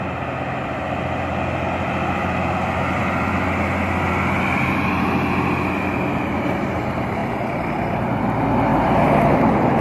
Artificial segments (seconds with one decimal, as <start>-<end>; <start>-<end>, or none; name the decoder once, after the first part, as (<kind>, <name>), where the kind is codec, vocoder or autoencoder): 7.2-8.2 (vocoder, BigVGAN v2); 8.7-9.3